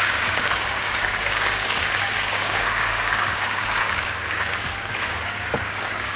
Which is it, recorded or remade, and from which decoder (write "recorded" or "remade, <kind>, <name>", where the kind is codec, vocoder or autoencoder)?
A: remade, codec, DAC